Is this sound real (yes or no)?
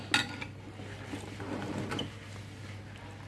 yes